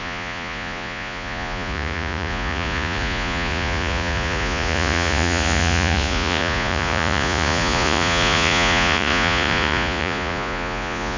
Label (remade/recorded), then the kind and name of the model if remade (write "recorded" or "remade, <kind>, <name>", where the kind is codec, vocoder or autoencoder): remade, vocoder, Vocos